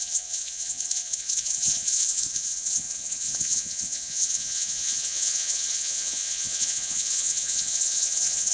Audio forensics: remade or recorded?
remade